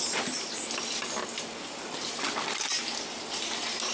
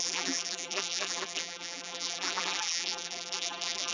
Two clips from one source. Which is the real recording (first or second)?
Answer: first